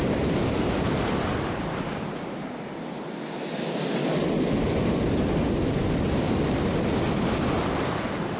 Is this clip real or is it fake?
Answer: real